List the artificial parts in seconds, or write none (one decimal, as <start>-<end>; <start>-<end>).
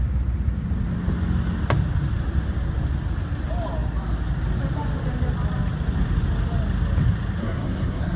7.4-8.2